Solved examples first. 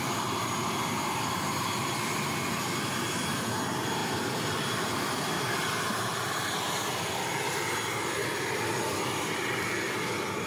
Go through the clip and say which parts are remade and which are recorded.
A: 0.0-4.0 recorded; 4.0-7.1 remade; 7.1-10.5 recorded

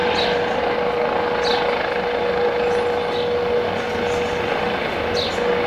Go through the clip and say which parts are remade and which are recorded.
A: 0.0-0.6 remade; 0.6-5.7 recorded

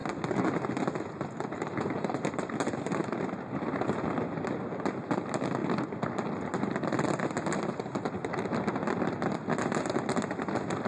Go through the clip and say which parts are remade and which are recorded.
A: 0.0-10.9 recorded